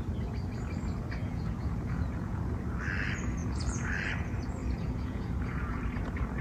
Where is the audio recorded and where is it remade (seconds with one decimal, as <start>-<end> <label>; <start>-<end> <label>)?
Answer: 0.0-1.2 recorded; 1.2-2.4 remade; 2.4-3.4 recorded; 3.4-3.9 remade; 3.9-4.6 recorded; 4.6-5.8 remade; 5.8-6.4 recorded